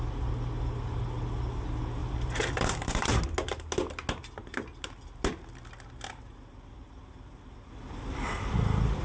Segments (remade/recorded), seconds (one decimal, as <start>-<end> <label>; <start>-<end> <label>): 0.0-2.0 recorded; 2.0-3.2 remade; 3.2-9.0 recorded